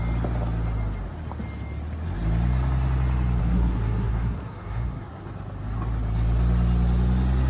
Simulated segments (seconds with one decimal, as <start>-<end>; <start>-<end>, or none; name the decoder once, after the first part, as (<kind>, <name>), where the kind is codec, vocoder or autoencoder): 3.4-5.3 (codec, SNAC)